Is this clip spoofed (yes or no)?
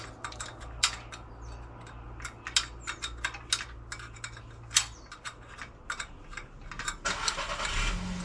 no